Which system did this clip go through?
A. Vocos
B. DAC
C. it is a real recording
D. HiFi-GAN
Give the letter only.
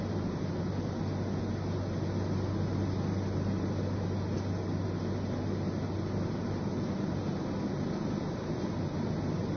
C